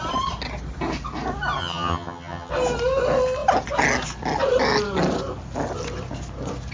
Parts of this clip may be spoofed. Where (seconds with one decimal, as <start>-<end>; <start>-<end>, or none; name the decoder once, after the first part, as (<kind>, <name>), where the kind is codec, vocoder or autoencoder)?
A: 1.6-2.5 (vocoder, HiFi-GAN)

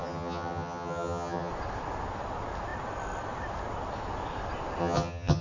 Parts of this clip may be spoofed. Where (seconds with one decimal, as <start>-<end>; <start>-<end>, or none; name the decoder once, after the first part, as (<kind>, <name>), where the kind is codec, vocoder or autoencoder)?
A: 0.0-1.5 (vocoder, HiFi-GAN); 4.8-5.4

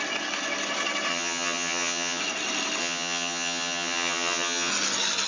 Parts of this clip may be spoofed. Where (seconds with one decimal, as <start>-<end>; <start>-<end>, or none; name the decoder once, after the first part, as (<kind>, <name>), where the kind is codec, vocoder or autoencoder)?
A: 1.1-2.2 (vocoder, HiFi-GAN); 2.8-4.7

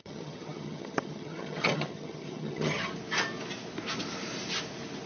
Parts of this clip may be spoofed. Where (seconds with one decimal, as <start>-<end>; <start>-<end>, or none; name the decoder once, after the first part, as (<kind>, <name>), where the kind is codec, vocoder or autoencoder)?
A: 0.0-2.9 (vocoder, HiFi-GAN)

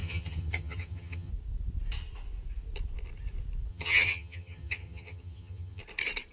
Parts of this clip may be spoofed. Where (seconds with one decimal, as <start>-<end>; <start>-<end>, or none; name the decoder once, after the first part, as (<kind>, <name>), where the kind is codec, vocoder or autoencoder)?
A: 0.0-1.3 (vocoder, HiFi-GAN); 3.7-5.8